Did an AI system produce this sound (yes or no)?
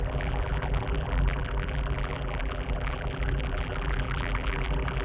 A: yes